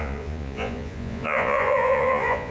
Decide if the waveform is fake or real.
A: fake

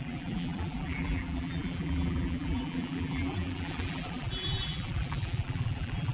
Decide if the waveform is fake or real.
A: fake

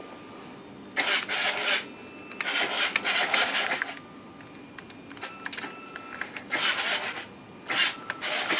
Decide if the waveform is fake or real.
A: real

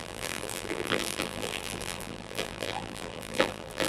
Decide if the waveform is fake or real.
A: fake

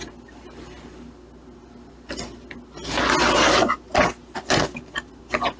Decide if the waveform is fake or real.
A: real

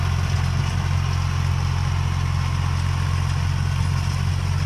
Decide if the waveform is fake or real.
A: real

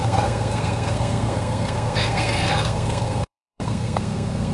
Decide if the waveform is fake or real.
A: fake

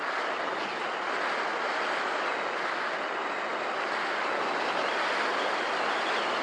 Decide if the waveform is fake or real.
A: real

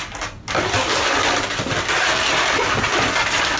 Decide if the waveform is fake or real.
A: real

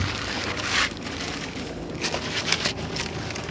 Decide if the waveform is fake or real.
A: fake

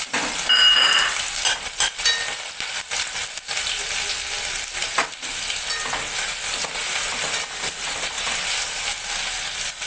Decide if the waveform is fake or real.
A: real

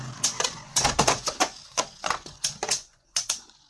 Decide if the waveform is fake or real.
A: fake